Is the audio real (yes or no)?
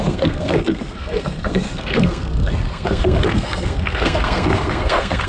no